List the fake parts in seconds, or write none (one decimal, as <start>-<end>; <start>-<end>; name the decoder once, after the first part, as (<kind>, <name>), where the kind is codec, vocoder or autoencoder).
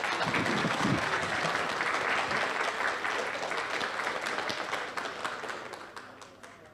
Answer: 0.6-1.4 (codec, DAC)